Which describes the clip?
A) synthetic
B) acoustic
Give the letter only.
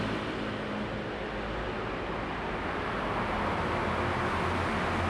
B